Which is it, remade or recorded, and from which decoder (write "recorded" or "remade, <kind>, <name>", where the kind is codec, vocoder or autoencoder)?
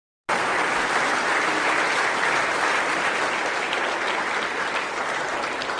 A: recorded